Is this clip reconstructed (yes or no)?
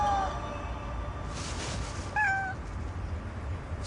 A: no